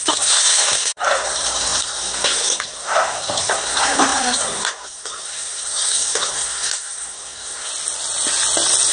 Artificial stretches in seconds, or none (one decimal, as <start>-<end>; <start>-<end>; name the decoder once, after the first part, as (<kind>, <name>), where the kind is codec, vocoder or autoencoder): 0.0-7.7 (codec, SNAC)

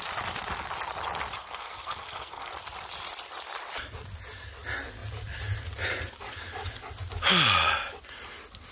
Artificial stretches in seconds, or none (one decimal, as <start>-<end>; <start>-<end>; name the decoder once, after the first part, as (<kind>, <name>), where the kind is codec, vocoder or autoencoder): 1.4-2.5 (codec, SNAC)

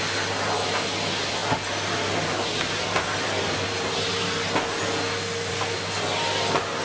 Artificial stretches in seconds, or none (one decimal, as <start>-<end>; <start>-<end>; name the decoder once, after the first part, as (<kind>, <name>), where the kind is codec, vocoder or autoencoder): none